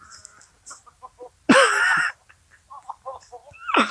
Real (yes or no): yes